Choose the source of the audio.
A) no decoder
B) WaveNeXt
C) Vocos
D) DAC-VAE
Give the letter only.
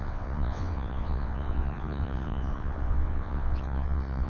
B